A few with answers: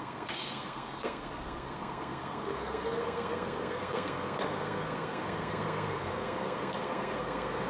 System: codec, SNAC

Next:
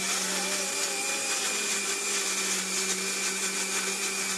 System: none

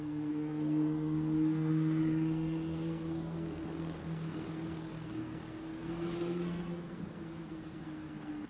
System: codec, SNAC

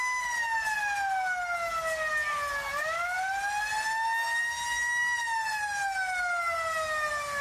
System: none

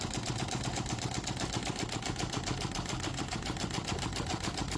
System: none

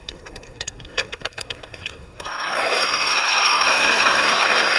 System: codec, SNAC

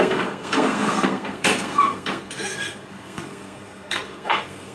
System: codec, SNAC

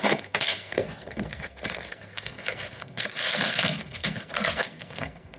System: codec, SNAC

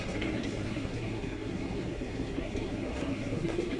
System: codec, SNAC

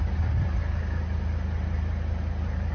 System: none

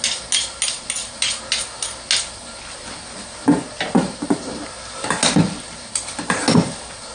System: none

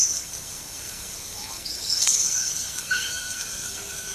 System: codec, SNAC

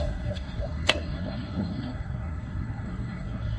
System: codec, SNAC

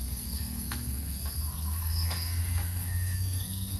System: codec, SNAC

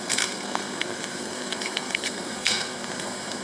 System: codec, SNAC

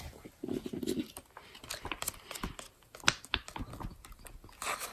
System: none